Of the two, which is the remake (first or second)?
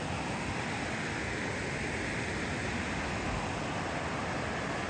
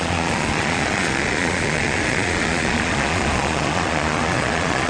second